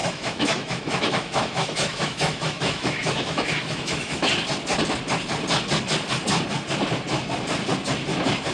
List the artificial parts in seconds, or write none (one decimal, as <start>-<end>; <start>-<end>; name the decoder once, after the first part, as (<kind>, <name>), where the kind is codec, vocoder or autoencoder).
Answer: 0.0-4.3 (autoencoder, DAC-VAE)